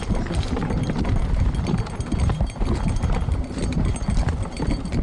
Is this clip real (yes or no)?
yes